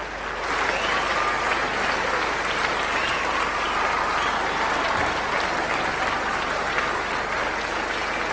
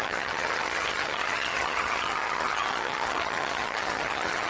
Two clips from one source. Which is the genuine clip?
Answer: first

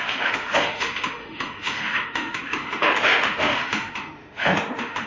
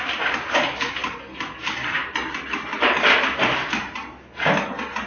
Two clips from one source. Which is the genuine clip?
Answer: second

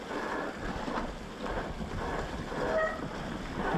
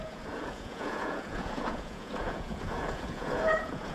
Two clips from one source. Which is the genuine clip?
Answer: first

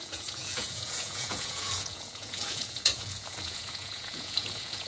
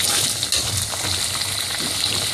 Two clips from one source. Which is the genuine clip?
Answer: second